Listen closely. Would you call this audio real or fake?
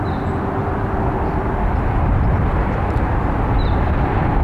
real